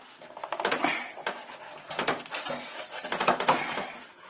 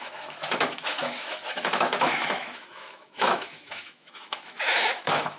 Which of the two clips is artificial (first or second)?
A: second